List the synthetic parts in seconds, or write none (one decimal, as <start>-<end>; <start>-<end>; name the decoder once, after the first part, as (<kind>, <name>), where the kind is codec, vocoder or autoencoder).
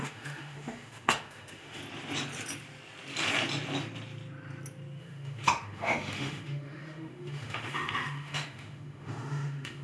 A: 0.0-1.8 (autoencoder, DAC-VAE); 5.0-9.8